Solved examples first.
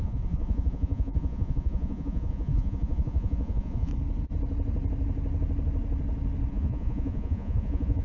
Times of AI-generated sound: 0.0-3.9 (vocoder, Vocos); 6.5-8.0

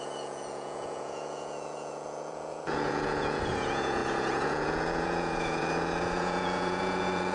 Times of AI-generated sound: 0.0-7.3 (vocoder, Vocos)

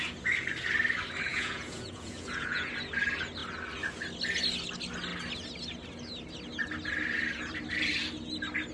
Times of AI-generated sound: 1.3-2.7 (vocoder, Vocos)